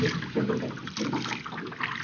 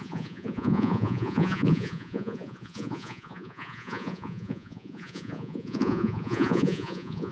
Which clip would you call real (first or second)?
first